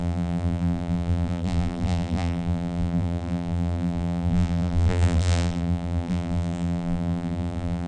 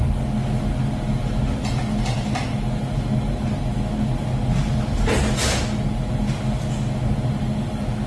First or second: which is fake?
first